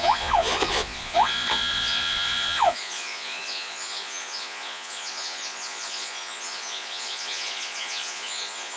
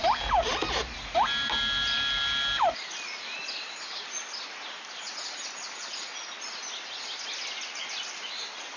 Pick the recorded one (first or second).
second